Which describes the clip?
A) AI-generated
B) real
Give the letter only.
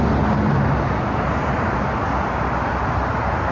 B